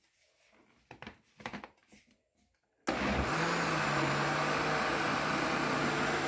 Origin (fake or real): real